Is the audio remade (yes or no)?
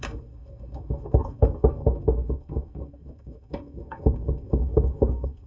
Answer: yes